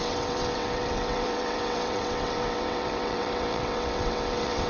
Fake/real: fake